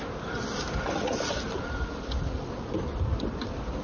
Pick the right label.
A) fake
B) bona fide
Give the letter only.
B